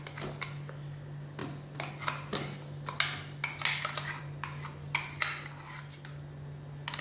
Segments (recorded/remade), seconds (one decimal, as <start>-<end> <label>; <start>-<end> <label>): 0.0-7.0 recorded